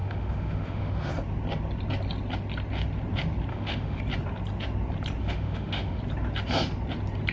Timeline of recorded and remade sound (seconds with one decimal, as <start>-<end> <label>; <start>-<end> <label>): 0.0-1.1 remade; 1.1-3.5 recorded; 3.5-4.0 remade; 4.0-5.2 recorded; 5.2-6.0 remade; 6.0-7.3 recorded